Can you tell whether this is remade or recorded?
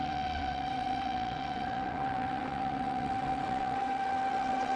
remade